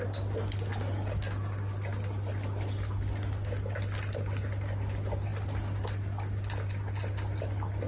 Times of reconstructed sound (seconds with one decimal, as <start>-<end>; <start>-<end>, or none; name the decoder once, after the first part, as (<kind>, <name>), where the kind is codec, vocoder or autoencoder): none